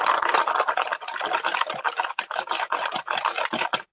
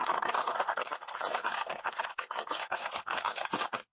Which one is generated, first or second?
second